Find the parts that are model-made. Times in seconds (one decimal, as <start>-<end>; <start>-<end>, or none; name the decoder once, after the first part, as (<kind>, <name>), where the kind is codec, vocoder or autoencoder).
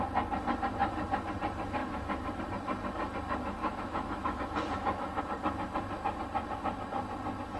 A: 1.8-2.4 (autoencoder, DAC-VAE); 3.6-5.2